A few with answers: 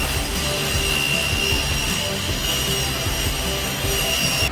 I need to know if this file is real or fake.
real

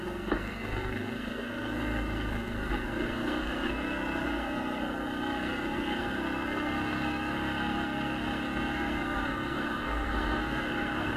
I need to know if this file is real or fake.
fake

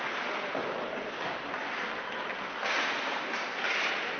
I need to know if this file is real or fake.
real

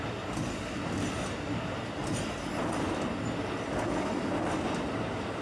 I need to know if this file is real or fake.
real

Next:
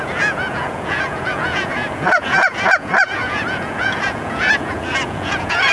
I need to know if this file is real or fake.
fake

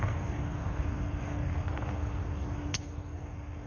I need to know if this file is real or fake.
fake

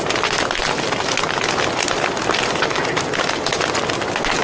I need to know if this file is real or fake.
real